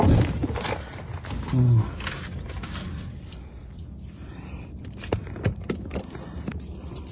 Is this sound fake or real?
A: real